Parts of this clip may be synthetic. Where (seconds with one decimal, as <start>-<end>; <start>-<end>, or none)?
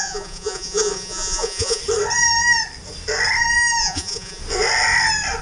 0.0-1.8; 3.8-4.4